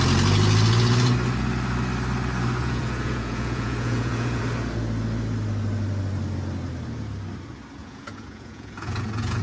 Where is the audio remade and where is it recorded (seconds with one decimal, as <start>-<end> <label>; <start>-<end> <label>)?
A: 0.0-2.6 recorded; 2.6-4.4 remade; 4.4-7.8 recorded; 7.8-9.4 remade